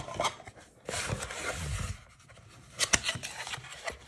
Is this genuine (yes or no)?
yes